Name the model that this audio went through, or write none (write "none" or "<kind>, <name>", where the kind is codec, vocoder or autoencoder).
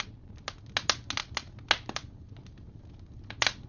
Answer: none